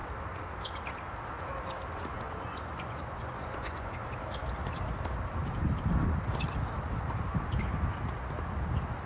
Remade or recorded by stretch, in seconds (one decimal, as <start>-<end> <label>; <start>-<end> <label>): 0.0-1.9 recorded; 1.9-4.0 remade; 4.0-9.1 recorded